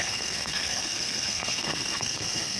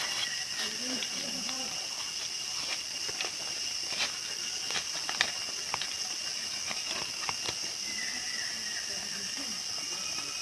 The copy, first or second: first